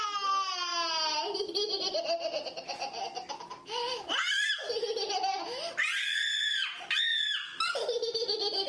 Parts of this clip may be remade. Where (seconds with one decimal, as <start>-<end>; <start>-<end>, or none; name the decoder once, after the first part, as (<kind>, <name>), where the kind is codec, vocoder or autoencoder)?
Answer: none